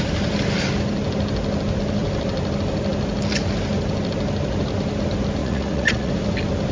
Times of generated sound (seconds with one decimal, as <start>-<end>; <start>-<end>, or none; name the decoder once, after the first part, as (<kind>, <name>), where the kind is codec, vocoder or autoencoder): 5.4-6.1 (vocoder, Vocos)